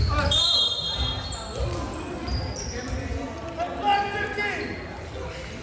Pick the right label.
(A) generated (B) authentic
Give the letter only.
B